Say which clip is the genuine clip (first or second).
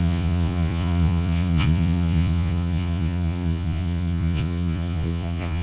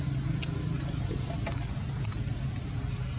second